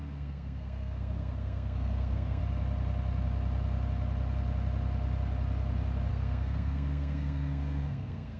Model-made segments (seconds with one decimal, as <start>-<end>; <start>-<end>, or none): 0.0-2.4; 6.1-8.4